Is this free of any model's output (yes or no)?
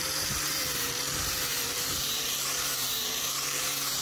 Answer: no